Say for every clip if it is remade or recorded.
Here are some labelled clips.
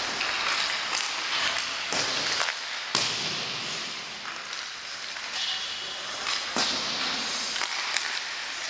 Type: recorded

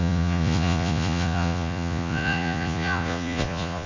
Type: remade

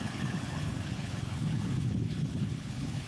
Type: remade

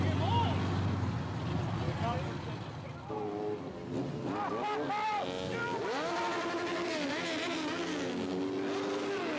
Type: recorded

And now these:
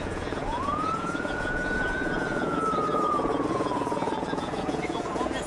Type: remade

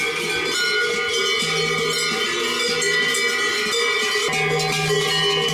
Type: recorded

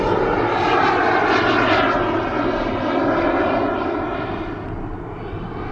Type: recorded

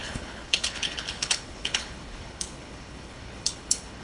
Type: remade